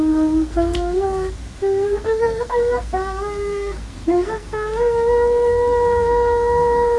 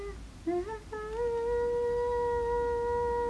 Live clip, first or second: second